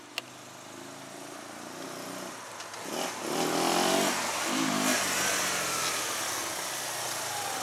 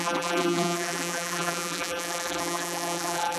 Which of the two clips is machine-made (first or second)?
second